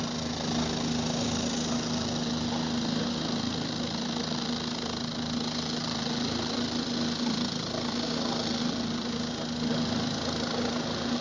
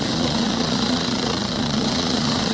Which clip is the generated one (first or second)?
second